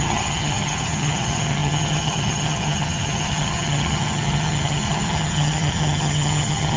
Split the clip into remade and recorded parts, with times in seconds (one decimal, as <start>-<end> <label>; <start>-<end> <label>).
0.0-6.8 remade